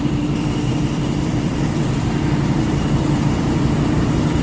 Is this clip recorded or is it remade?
remade